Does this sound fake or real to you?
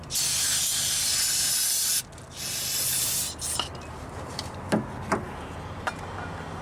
real